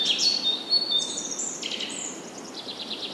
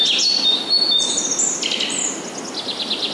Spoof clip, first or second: first